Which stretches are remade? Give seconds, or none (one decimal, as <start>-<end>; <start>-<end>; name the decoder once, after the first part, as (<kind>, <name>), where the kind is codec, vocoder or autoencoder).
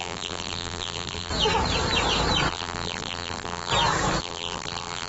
0.0-1.3 (vocoder, BigVGAN v2); 2.5-3.7; 4.2-5.1